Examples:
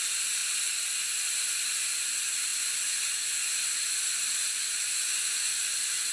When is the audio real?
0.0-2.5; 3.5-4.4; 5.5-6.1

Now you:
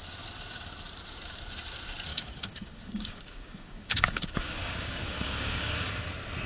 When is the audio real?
0.0-2.1; 6.0-6.5

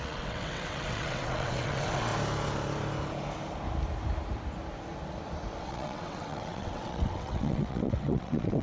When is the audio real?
2.1-5.6

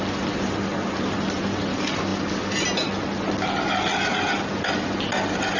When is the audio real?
0.0-5.6

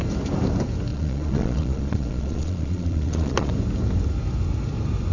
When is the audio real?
0.0-0.9; 3.5-5.1